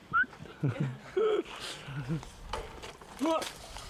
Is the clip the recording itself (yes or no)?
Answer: yes